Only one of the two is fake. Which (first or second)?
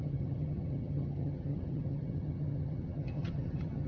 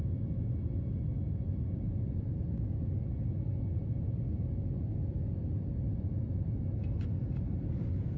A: first